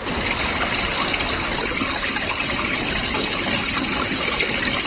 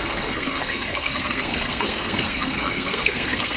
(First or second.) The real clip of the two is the first